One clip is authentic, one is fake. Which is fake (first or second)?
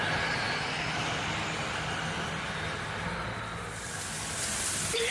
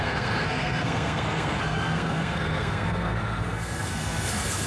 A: second